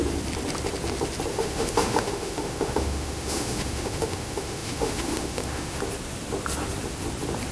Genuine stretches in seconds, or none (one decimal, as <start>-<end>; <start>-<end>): 0.0-1.3; 5.8-7.5